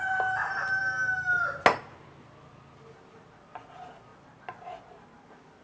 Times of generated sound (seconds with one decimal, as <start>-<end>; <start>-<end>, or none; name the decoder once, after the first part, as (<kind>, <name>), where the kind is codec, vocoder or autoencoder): none